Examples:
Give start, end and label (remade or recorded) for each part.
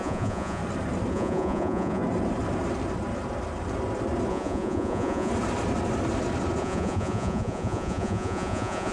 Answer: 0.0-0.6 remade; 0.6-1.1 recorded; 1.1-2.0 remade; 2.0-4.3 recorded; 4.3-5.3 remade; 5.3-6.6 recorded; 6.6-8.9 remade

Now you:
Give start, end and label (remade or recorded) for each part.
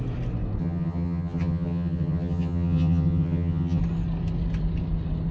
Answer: 0.0-0.6 recorded; 0.6-3.8 remade; 3.8-5.3 recorded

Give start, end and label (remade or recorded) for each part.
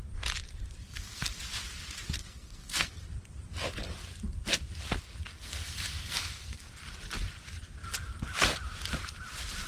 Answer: 0.0-0.8 recorded; 0.8-1.3 remade; 1.3-2.2 recorded; 2.2-3.0 remade; 3.0-5.3 recorded; 5.3-6.7 remade; 6.7-9.7 recorded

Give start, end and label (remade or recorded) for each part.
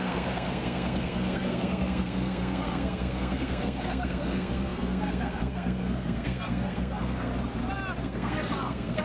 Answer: 0.0-7.3 remade; 7.3-8.0 recorded; 8.0-9.0 remade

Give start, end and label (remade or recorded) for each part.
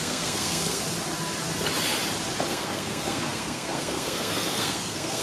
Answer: 0.0-0.9 remade; 0.9-2.5 recorded; 2.5-5.2 remade